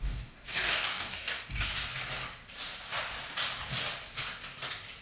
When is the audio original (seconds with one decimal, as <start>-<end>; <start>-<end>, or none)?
1.7-5.0